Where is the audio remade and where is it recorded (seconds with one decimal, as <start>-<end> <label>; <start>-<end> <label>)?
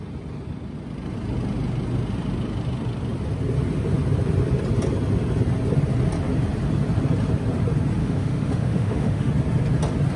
0.0-8.0 recorded; 8.0-9.3 remade; 9.3-10.2 recorded